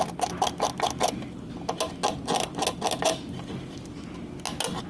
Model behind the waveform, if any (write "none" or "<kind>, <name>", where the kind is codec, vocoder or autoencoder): none